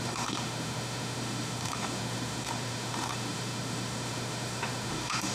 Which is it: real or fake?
fake